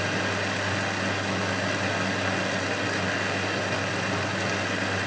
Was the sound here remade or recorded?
recorded